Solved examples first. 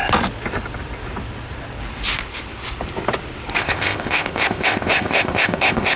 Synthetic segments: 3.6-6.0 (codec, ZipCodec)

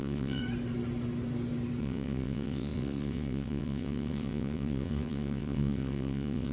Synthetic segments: 0.0-0.4 (vocoder, WaveNeXt); 1.8-6.5

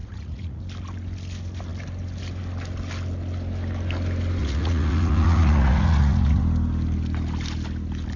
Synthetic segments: 0.0-0.6 (vocoder, Vocos); 4.4-6.4

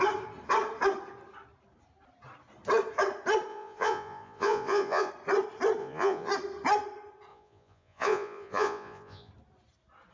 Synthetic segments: 3.5-5.1 (vocoder, Vocos); 5.8-6.3; 7.3-9.3

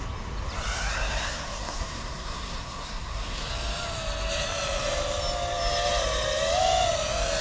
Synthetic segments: 0.9-3.5 (codec, SNAC)

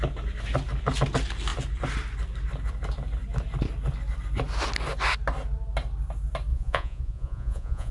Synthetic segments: 6.5-7.9 (vocoder, Vocos)

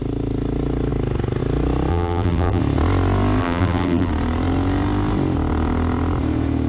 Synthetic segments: 1.9-2.6 (vocoder, BigVGAN v2); 3.4-4.1

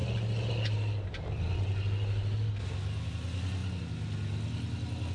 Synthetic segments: none